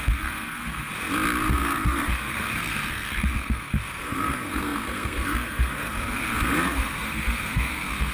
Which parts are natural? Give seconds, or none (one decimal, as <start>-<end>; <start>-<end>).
0.9-1.5

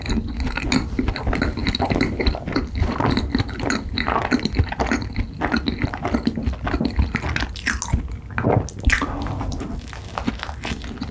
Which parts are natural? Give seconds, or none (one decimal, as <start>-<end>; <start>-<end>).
0.0-1.6; 5.1-11.1

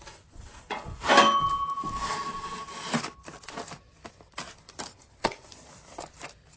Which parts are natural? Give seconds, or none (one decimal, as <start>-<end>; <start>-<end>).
1.1-4.8; 5.6-6.6

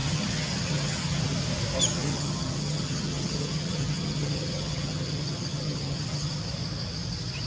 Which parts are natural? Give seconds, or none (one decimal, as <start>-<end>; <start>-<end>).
1.2-1.9; 6.4-7.5

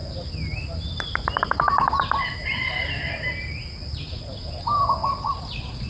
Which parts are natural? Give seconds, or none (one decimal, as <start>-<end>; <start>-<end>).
0.0-5.0

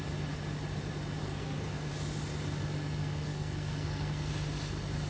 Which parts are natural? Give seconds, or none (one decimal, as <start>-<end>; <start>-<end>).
0.0-1.2; 1.9-3.0; 4.3-5.1

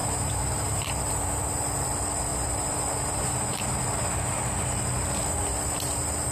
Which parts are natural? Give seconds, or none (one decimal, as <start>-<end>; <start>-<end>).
1.1-2.3; 3.6-6.3